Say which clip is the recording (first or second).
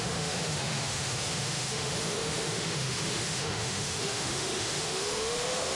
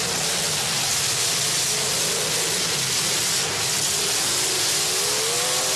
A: second